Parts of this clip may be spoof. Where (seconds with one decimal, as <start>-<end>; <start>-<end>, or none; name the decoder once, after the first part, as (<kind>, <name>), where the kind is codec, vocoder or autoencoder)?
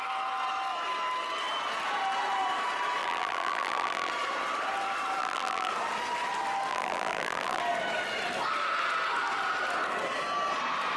3.0-4.1 (vocoder, BigVGAN v2); 5.2-5.7; 6.7-7.6